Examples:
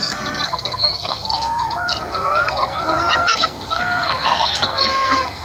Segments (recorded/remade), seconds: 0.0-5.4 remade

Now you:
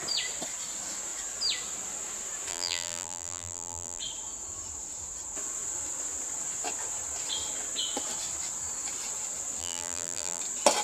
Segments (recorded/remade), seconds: 0.0-2.5 recorded; 2.5-4.0 remade; 4.0-9.6 recorded; 9.6-10.4 remade; 10.4-10.8 recorded

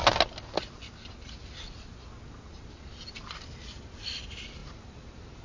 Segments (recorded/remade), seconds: 0.0-4.6 recorded; 4.6-5.4 remade

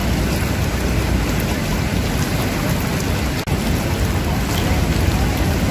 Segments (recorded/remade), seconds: 0.0-5.7 recorded

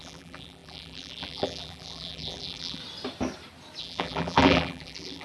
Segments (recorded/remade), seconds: 0.0-2.8 remade; 2.8-3.8 recorded; 3.8-5.2 remade

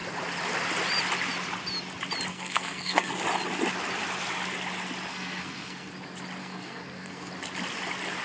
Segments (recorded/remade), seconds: 0.0-2.3 recorded; 2.3-3.1 remade; 3.1-5.1 recorded; 5.1-5.9 remade; 5.9-6.4 recorded; 6.4-7.3 remade; 7.3-8.2 recorded